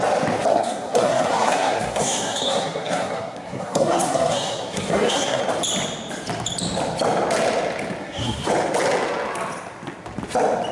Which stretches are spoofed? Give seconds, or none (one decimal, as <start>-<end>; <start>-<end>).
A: 0.5-5.4; 8.0-8.5